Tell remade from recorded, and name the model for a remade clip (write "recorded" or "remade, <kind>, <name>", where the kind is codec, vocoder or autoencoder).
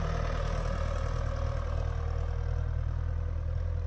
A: recorded